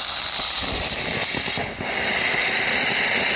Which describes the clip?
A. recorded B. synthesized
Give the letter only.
A